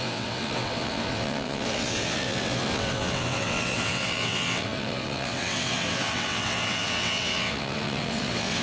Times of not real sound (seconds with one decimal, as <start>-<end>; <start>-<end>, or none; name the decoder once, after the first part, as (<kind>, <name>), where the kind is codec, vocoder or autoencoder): 0.0-8.6 (vocoder, WaveNeXt)